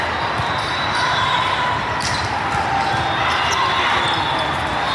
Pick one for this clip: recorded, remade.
recorded